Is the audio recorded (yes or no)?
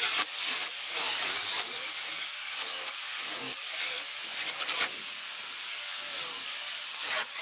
no